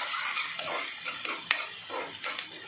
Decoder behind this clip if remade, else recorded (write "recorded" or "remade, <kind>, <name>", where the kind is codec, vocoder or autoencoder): recorded